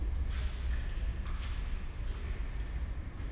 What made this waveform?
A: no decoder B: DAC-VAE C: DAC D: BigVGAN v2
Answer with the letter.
A